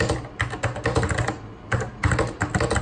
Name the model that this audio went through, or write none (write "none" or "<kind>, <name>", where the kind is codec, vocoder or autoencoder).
none